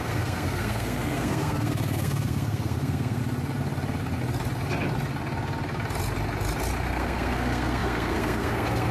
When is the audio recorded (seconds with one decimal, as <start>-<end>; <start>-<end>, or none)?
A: 3.2-6.9